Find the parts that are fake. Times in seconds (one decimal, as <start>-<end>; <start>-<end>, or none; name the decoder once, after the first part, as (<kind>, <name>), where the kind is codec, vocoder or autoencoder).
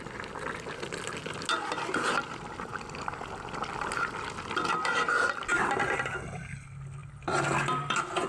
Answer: none